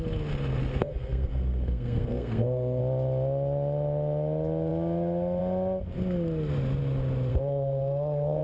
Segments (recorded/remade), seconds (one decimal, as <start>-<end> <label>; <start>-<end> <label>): 0.0-0.7 recorded; 0.7-2.8 remade; 2.8-7.3 recorded; 7.3-8.4 remade